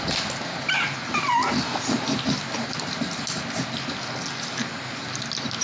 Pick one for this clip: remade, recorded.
recorded